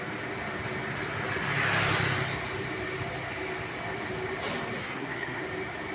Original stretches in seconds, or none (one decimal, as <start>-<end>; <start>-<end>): 0.0-4.8; 5.4-5.9